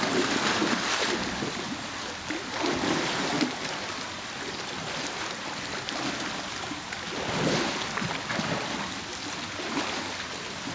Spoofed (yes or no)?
no